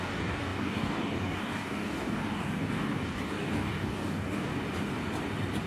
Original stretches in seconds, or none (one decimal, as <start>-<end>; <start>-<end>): 4.5-5.7